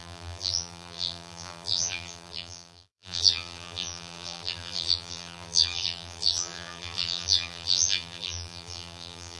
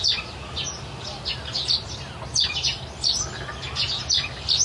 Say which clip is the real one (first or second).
second